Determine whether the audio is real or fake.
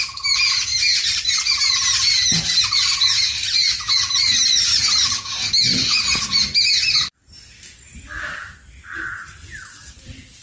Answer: real